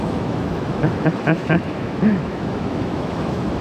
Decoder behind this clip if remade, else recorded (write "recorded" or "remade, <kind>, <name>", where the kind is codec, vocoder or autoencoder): remade, autoencoder, DAC-VAE